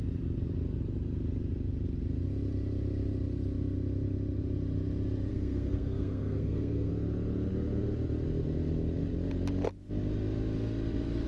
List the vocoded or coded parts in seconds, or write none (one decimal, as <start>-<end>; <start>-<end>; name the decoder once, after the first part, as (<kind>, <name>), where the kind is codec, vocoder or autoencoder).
5.3-6.9 (codec, SNAC)